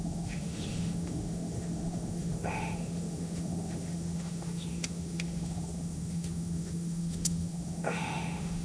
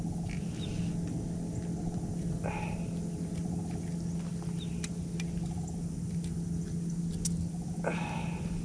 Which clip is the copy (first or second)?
first